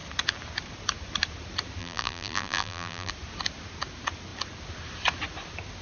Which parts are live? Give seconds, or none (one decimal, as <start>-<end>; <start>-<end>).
0.0-1.8; 3.1-5.8